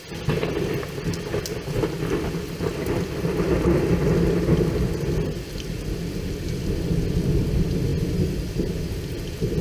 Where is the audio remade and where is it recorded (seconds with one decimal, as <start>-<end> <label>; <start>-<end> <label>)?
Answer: 0.0-9.6 recorded